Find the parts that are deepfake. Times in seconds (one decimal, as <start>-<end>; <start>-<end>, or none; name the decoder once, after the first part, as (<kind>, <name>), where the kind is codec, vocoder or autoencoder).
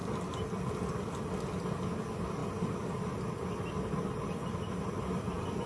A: none